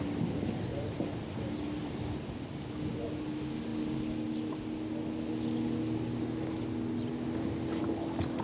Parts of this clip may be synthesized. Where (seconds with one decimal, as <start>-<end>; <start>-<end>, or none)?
0.7-2.3